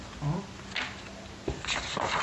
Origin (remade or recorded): recorded